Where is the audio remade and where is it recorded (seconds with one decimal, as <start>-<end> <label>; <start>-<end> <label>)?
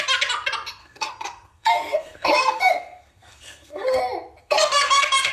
0.0-0.8 recorded; 0.8-4.0 remade; 4.0-4.4 recorded; 4.4-5.3 remade